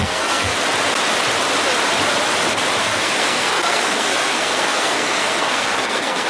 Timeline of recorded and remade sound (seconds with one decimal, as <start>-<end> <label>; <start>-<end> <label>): 0.0-0.5 remade; 0.5-2.8 recorded; 2.8-6.3 remade